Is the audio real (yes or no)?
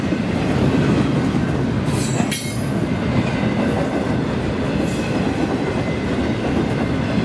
yes